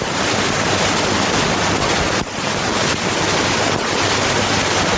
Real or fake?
real